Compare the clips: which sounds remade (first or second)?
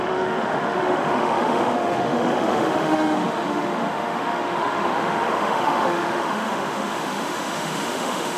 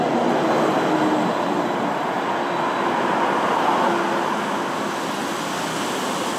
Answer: first